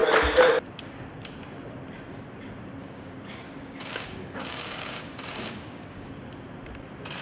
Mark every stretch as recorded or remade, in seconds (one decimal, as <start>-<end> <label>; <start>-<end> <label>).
0.0-2.8 recorded; 2.8-6.1 remade; 6.1-7.2 recorded